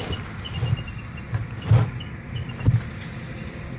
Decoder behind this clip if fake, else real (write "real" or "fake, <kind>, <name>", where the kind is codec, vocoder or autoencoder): real